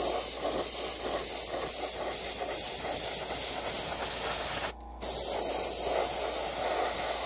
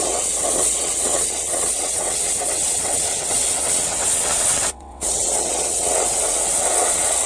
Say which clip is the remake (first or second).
second